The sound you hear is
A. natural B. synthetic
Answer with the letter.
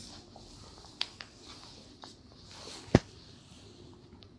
A